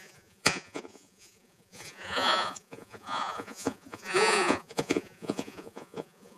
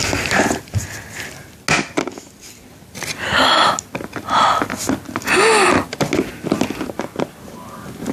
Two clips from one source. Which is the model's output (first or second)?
first